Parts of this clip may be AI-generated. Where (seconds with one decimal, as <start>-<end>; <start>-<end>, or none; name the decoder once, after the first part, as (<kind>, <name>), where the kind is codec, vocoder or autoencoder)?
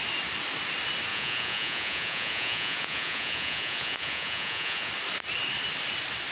1.1-4.9 (vocoder, Vocos)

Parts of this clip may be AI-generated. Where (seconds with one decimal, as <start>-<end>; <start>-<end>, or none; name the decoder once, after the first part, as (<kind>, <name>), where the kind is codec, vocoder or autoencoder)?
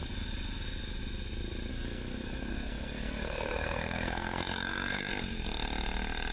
1.7-5.1 (codec, SNAC)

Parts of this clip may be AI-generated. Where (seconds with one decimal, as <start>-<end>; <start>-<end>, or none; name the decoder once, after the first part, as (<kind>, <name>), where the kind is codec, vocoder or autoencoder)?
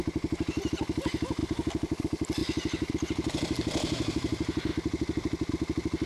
none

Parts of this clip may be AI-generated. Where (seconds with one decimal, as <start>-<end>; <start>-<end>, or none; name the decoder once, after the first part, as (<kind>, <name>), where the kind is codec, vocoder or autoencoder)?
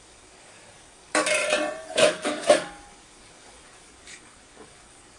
0.0-1.4 (codec, DAC); 1.9-5.2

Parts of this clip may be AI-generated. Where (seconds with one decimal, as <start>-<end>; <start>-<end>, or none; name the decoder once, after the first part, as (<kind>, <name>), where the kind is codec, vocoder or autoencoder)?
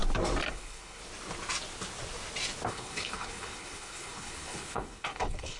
0.5-1.0 (codec, HILCodec); 2.7-5.6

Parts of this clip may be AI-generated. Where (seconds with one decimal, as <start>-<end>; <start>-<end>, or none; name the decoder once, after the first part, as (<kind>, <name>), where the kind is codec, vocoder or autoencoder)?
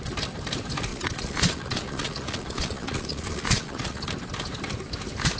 0.9-4.1 (vocoder, Vocos)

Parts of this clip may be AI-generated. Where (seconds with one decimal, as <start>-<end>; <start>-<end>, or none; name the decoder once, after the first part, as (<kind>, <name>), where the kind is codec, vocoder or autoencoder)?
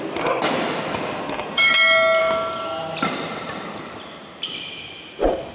1.2-1.7 (codec, DAC); 2.2-2.8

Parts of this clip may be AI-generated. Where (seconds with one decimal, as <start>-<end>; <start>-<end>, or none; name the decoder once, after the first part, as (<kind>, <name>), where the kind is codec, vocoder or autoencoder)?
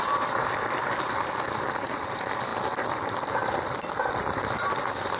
none